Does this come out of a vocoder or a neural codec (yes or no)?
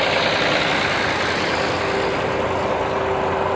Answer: no